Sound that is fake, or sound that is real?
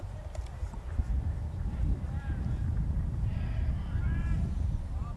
fake